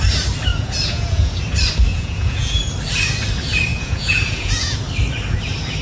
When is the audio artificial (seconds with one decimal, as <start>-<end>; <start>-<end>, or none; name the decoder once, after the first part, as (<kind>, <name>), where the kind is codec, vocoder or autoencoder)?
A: 0.5-1.4 (vocoder, Vocos); 1.9-2.7; 3.7-4.8